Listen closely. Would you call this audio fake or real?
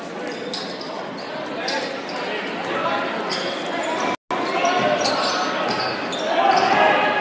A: real